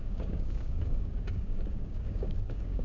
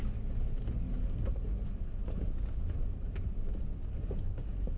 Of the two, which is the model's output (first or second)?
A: first